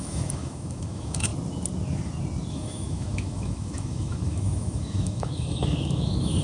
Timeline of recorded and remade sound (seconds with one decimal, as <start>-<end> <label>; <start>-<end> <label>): 0.0-1.3 remade; 1.3-2.5 recorded; 2.5-6.4 remade